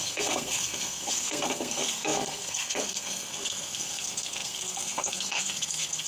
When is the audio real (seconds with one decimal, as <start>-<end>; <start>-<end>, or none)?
none